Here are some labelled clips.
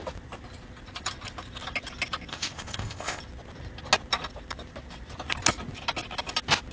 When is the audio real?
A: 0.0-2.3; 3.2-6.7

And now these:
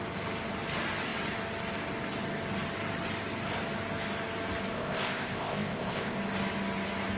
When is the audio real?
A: 0.0-4.7; 6.2-7.2

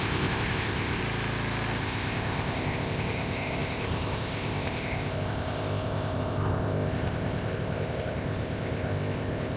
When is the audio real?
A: 1.0-1.8

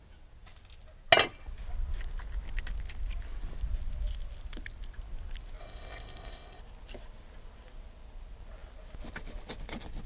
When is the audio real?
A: 0.0-5.6; 6.6-10.1

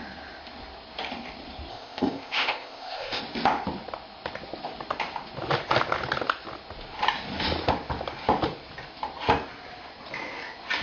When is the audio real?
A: 0.0-1.7; 3.2-10.8

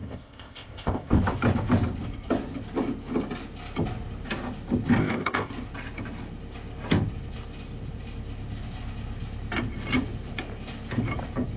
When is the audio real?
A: 1.2-5.0; 5.5-11.6

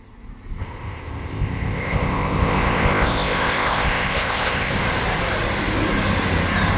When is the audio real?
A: 0.0-0.6; 4.7-6.8

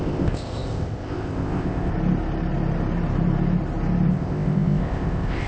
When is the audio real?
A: 1.9-4.1